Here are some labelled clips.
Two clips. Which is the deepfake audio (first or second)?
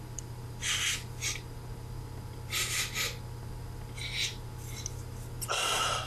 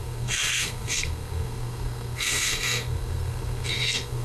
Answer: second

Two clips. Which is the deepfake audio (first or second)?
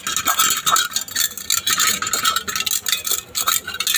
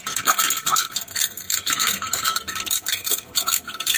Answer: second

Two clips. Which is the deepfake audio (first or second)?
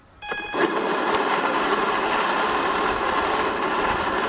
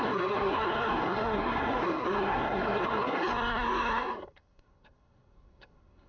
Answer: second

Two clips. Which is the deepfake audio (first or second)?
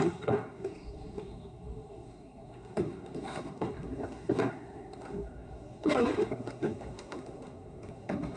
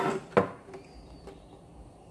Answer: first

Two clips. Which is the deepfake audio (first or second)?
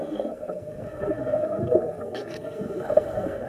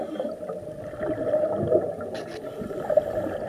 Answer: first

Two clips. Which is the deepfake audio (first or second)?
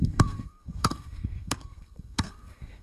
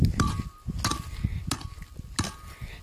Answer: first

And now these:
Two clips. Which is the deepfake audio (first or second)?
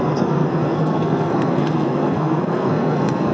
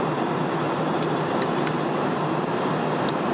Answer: first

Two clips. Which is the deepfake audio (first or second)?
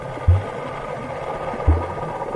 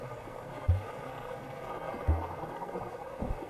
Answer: second